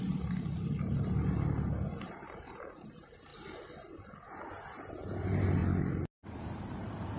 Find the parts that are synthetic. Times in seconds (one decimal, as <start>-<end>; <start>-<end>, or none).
2.0-3.3; 4.8-5.6; 6.4-7.2